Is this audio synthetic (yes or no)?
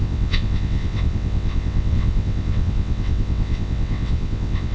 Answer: yes